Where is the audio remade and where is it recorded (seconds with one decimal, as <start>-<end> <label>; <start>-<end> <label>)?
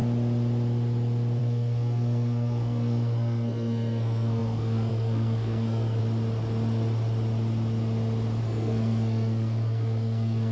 0.0-1.4 recorded; 1.4-6.0 remade; 6.0-8.4 recorded; 8.4-10.5 remade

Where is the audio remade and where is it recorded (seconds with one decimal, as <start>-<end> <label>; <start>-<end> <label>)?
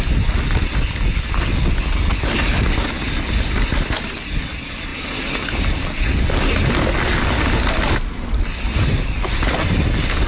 0.0-10.3 recorded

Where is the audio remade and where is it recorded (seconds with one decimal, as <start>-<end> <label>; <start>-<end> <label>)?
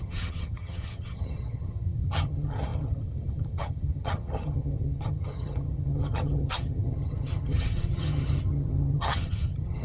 0.0-9.8 remade